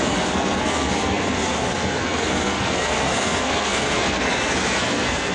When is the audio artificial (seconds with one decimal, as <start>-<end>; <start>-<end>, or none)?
0.0-5.3